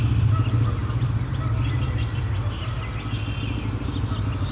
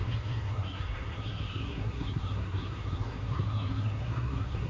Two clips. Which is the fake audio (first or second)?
second